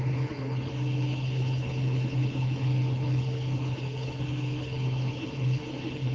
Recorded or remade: remade